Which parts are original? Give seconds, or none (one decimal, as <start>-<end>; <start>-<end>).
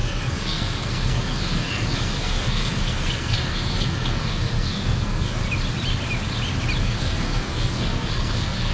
5.4-6.8